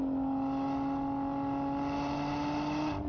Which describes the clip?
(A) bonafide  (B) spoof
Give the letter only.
A